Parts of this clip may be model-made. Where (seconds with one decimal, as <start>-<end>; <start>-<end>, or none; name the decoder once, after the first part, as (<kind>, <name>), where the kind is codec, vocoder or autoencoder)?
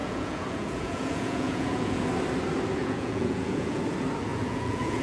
0.0-2.0 (vocoder, Vocos); 2.8-3.8; 4.3-5.0